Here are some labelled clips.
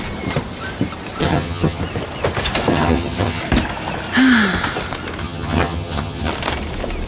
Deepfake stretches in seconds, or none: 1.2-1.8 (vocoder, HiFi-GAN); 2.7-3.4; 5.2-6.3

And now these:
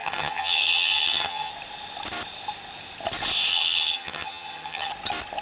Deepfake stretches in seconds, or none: 0.0-1.5 (vocoder, HiFi-GAN); 3.5-4.9

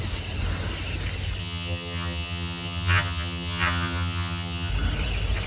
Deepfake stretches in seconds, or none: 1.4-4.7 (vocoder, HiFi-GAN)

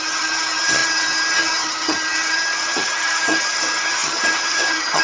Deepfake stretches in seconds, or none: 0.0-5.0 (vocoder, HiFi-GAN)

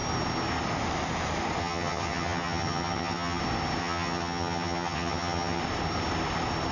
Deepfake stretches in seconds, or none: 1.6-3.4 (vocoder, HiFi-GAN); 3.8-5.6

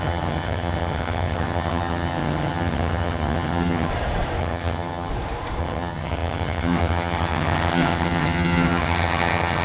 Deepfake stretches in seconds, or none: 0.0-3.9 (vocoder, HiFi-GAN); 4.4-5.1; 5.6-9.6

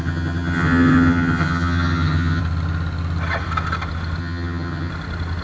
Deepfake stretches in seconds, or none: 0.0-2.4 (vocoder, HiFi-GAN); 4.2-4.9

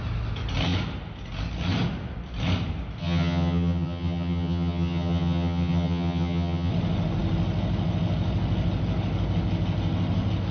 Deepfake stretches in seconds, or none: 3.0-6.7 (vocoder, HiFi-GAN)